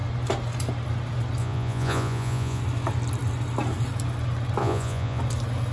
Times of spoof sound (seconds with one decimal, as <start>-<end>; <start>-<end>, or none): 1.4-2.6; 4.6-5.2